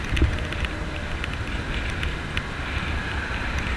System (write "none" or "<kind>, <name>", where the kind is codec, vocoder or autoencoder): none